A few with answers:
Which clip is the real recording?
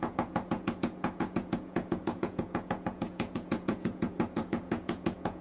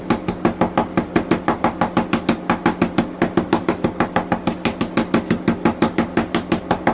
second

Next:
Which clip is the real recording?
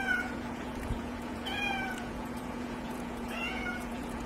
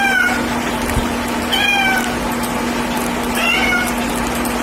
second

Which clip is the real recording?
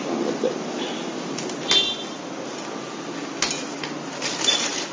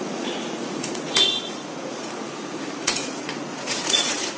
first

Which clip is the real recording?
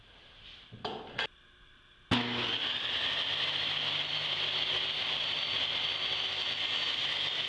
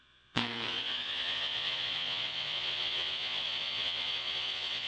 first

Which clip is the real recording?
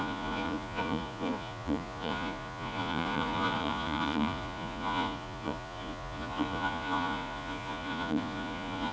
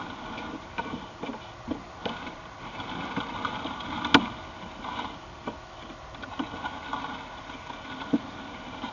second